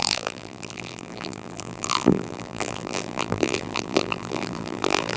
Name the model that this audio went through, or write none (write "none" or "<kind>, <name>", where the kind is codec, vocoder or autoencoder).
vocoder, BigVGAN v2